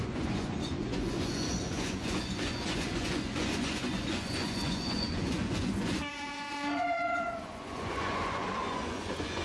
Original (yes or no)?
no